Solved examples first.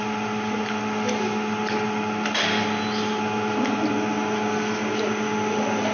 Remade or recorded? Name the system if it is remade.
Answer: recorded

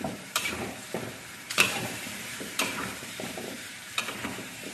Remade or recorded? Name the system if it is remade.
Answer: remade, vocoder, BigVGAN v2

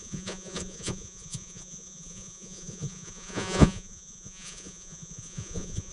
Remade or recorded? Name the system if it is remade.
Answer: remade, vocoder, Vocos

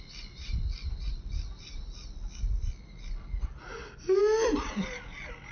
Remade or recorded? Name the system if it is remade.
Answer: recorded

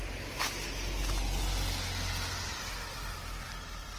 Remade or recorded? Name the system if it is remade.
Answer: recorded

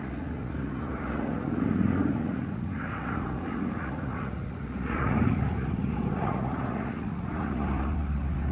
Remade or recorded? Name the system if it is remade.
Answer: remade, vocoder, Vocos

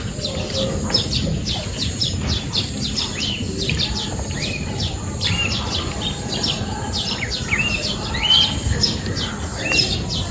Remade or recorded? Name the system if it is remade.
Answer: recorded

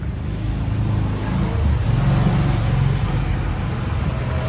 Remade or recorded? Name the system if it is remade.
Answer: recorded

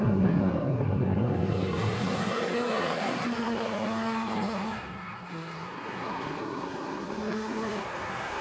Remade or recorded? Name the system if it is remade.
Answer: remade, codec, SNAC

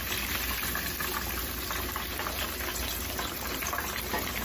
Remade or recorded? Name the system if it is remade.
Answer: recorded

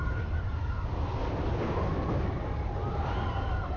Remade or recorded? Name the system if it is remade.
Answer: recorded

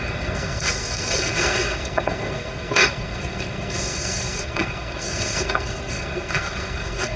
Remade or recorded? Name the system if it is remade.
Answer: remade, codec, SNAC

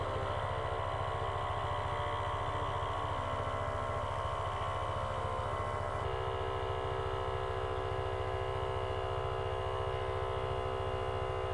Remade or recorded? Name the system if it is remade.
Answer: recorded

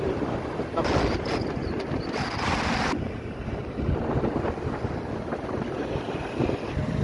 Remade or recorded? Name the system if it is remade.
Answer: recorded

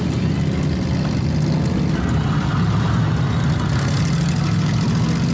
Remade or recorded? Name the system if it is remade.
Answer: recorded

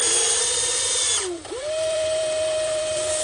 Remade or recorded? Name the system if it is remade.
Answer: remade, vocoder, BigVGAN v2